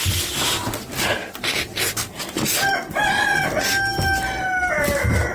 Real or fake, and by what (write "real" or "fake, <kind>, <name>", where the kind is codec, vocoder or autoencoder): real